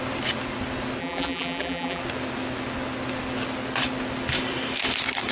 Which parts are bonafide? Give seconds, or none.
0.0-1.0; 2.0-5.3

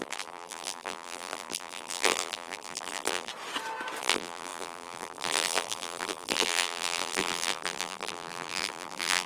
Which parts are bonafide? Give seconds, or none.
3.3-4.0